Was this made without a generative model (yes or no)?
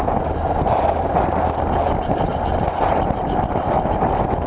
yes